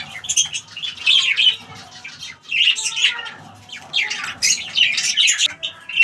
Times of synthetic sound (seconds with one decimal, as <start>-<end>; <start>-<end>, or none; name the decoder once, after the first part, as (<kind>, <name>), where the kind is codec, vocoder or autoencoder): none